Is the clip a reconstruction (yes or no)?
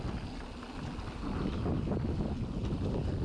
no